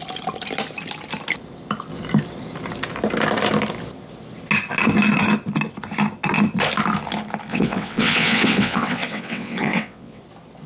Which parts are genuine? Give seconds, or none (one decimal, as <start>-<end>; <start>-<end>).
0.0-7.5; 10.2-10.7